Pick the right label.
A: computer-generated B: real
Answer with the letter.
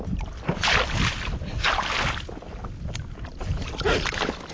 B